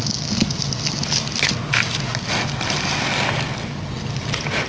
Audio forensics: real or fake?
real